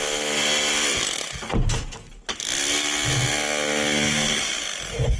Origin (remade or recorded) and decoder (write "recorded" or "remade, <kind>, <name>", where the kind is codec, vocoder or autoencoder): recorded